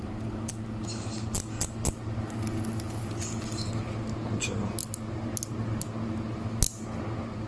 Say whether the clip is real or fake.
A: real